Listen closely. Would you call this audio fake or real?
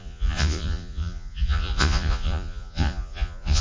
fake